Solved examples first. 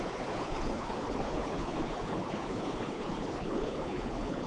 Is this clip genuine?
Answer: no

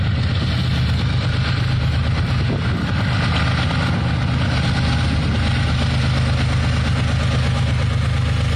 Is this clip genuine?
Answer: yes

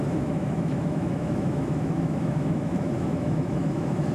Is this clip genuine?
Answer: no